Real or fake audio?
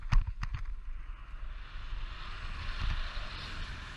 real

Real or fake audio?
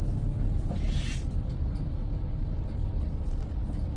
real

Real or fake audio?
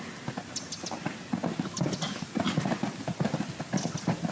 real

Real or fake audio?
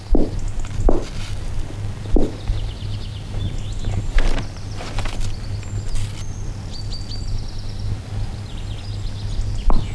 real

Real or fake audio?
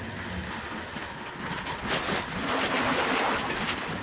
real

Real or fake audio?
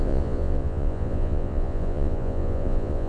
fake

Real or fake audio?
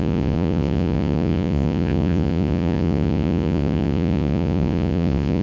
fake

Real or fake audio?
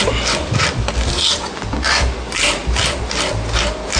real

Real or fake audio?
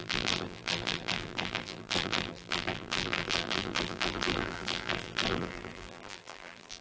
fake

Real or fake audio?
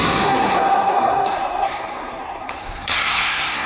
fake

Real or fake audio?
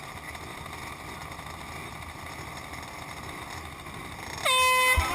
real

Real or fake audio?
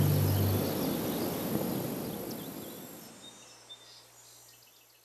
real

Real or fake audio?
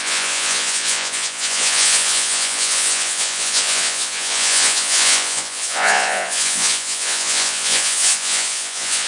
fake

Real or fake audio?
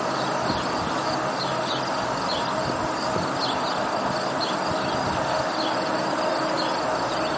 real